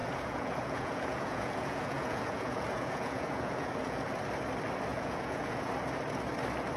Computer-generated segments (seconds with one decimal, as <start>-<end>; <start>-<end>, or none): 0.0-4.1; 4.9-5.7